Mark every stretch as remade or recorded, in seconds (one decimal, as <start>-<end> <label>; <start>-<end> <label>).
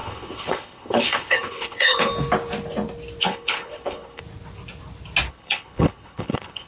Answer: 0.0-2.1 remade; 2.1-3.2 recorded; 3.2-4.2 remade; 4.2-5.3 recorded; 5.3-6.7 remade